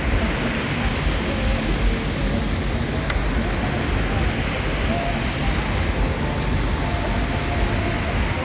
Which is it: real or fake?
real